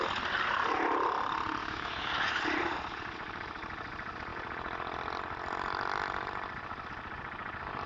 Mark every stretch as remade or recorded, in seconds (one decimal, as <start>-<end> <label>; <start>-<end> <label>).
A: 0.0-1.6 recorded; 1.6-2.4 remade; 2.4-7.9 recorded